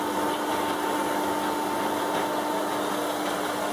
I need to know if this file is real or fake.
real